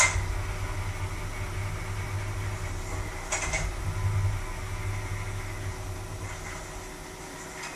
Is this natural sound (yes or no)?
yes